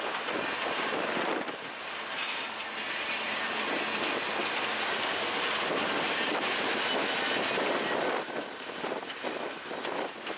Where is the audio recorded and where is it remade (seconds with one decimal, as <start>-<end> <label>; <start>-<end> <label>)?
0.0-10.4 recorded